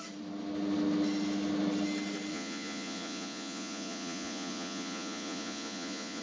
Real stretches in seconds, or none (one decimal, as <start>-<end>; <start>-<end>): 0.0-2.3